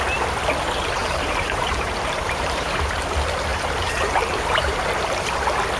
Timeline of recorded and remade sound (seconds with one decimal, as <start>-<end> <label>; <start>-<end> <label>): 0.0-1.0 recorded; 1.0-2.8 remade; 2.8-3.5 recorded; 3.5-5.3 remade; 5.3-5.8 recorded